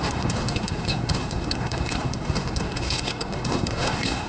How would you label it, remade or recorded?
remade